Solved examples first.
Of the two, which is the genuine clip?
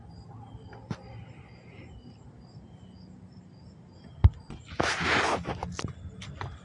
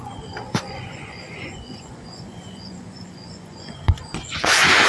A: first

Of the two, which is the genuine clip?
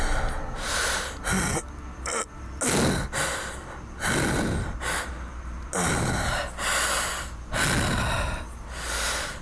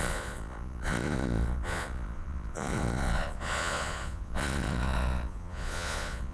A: first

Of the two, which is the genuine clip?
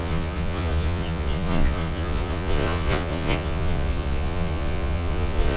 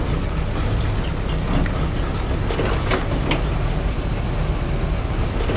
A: second